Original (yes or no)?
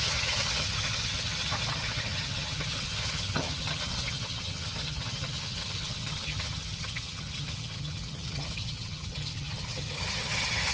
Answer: no